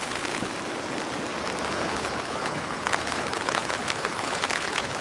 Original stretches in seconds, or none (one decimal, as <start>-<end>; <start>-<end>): 0.5-1.7